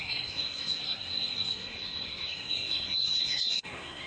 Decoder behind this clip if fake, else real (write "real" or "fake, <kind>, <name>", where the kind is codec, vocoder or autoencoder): fake, codec, SNAC